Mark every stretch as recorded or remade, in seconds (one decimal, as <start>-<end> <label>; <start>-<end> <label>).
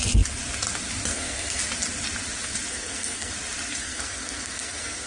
0.0-1.1 recorded; 1.1-1.6 remade; 1.6-2.7 recorded; 2.7-3.3 remade; 3.3-3.8 recorded; 3.8-5.1 remade